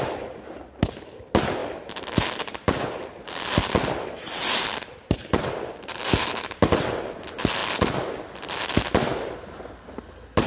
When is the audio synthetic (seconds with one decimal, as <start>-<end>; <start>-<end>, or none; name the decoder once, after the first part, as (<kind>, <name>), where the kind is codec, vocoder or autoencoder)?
none